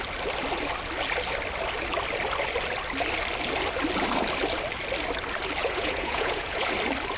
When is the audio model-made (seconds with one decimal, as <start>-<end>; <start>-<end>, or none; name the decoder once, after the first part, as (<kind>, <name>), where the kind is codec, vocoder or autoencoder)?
5.6-6.7 (vocoder, Vocos)